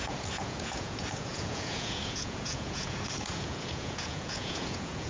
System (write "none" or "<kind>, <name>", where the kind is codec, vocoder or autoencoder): vocoder, Vocos